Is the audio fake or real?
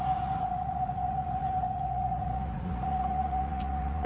fake